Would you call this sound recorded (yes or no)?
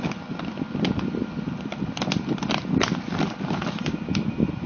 yes